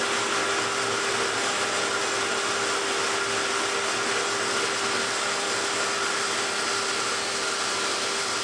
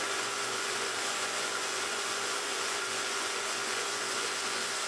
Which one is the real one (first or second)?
first